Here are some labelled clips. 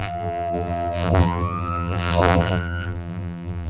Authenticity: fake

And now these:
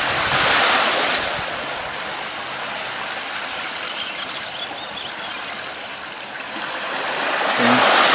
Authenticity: fake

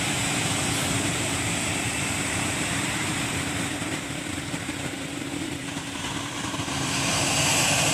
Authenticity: fake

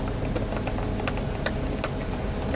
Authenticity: real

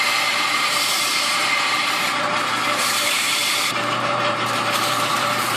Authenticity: fake